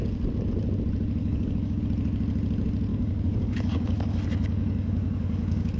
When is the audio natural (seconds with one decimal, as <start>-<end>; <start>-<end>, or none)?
0.0-1.2; 1.8-2.9